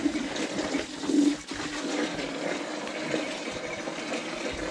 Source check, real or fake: real